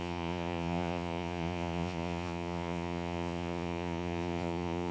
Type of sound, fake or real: fake